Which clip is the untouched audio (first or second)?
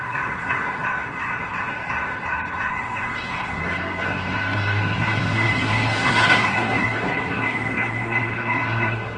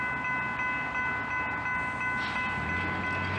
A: second